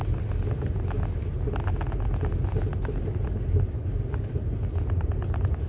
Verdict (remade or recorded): recorded